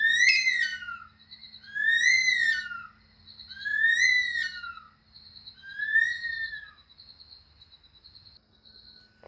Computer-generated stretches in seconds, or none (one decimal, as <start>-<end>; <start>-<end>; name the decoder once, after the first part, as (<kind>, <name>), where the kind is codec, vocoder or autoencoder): none